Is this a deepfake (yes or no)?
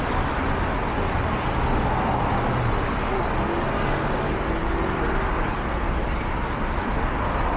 no